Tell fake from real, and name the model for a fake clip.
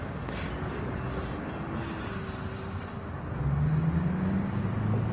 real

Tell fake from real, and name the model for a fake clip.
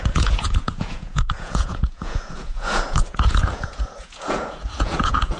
fake, vocoder, Vocos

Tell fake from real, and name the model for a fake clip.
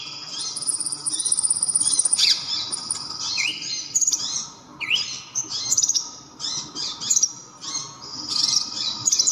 real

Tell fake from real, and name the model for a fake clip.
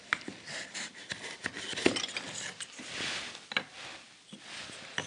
real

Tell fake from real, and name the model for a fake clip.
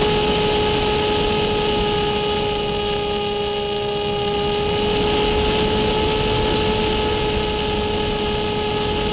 real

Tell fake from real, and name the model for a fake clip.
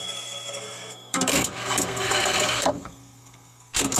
fake, codec, SNAC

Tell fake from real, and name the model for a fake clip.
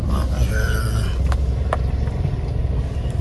real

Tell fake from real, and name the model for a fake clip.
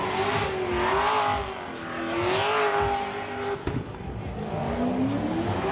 real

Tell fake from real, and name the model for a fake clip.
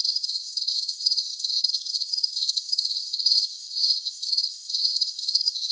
fake, codec, SNAC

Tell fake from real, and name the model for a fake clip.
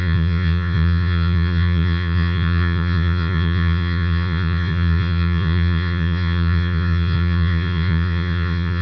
fake, vocoder, Vocos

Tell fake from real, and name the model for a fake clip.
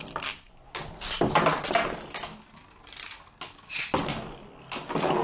real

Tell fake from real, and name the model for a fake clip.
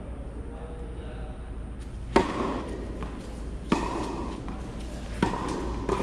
real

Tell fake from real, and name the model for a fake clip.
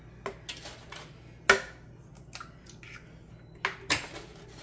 real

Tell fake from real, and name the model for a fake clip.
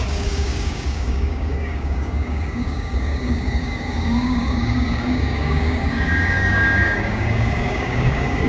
fake, codec, DAC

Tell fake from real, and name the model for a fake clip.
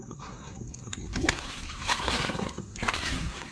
fake, codec, SNAC